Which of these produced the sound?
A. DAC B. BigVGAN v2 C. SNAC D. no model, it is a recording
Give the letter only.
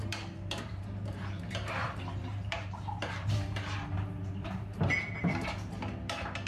B